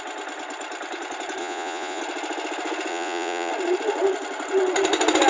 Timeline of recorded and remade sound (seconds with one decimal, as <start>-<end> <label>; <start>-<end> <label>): 0.0-1.4 recorded; 1.4-2.0 remade; 2.0-2.9 recorded; 2.9-3.5 remade; 3.5-5.3 recorded